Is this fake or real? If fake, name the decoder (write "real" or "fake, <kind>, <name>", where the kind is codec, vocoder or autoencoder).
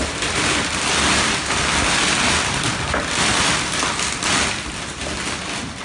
real